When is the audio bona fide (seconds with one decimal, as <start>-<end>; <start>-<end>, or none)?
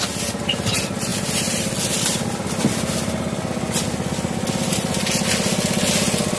0.0-6.4